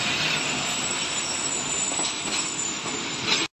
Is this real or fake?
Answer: real